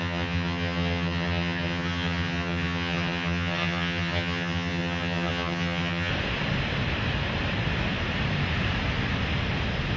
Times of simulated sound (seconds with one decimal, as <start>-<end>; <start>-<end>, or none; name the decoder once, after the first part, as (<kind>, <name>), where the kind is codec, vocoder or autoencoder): 0.0-6.1 (vocoder, HiFi-GAN)